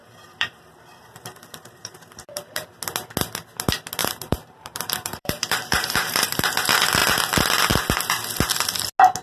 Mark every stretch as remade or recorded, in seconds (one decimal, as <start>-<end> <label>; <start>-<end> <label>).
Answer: 0.0-2.7 remade; 2.7-4.0 recorded; 4.0-6.5 remade; 6.5-9.2 recorded